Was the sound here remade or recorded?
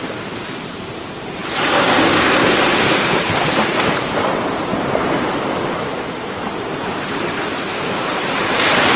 remade